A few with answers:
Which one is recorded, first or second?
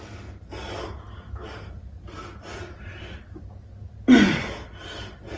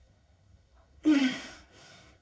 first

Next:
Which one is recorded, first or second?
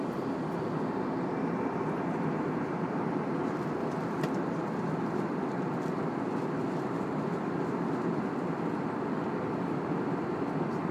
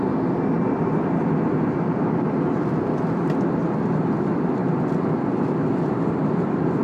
second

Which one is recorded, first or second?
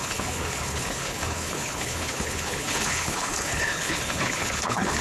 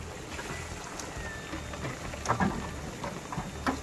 second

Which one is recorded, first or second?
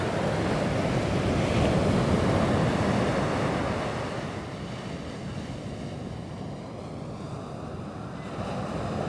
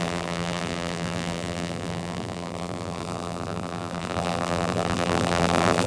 first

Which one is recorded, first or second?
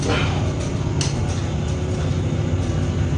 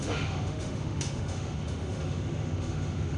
first